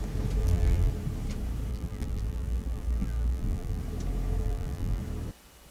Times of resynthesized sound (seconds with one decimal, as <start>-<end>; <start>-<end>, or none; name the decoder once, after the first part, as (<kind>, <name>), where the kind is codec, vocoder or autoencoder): 0.4-0.9 (vocoder, BigVGAN v2); 1.7-3.8; 4.4-5.0